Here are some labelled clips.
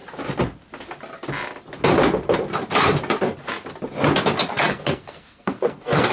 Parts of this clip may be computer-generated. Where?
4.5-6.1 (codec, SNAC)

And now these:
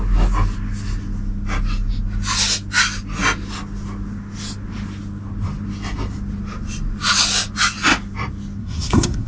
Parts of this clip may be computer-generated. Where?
8.6-9.3 (codec, SNAC)

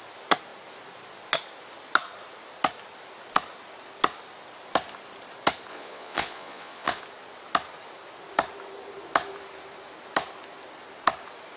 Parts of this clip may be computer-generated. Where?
5.7-7.0 (vocoder, Vocos)

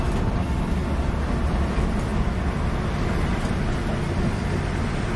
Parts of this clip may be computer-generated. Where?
0.0-0.8 (vocoder, BigVGAN v2); 1.5-2.1

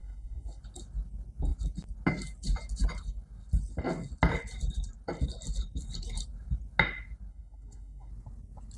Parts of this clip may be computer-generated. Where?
0.0-0.6 (codec, SNAC); 7.3-8.1

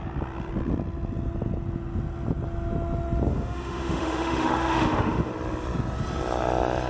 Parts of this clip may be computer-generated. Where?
3.3-5.3 (autoencoder, DAC-VAE)

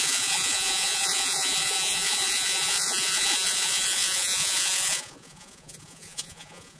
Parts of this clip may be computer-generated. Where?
0.0-6.8 (vocoder, Vocos)

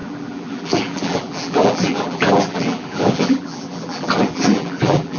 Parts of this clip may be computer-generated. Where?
0.0-5.2 (vocoder, BigVGAN v2)